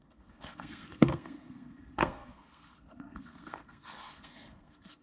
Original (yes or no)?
no